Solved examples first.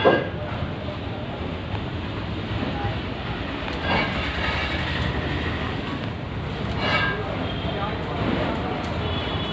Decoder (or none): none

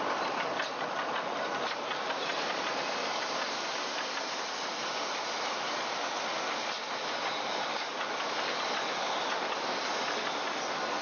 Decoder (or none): none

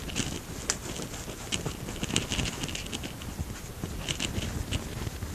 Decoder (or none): none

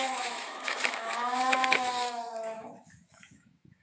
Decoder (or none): autoencoder, DAC-VAE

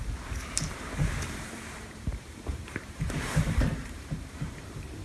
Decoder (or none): vocoder, BigVGAN v2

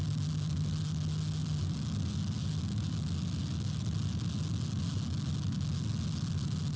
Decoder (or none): none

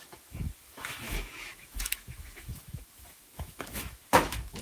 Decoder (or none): autoencoder, DAC-VAE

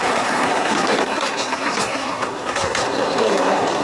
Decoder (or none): codec, SNAC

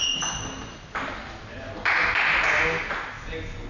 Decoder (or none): none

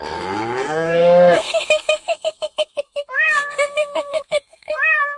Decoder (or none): codec, SNAC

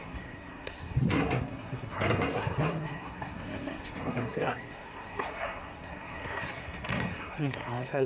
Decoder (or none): codec, SNAC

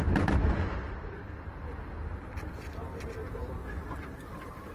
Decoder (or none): none